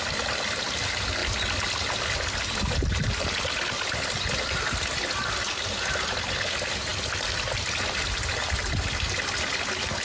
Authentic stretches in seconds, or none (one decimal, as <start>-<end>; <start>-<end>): 0.0-10.0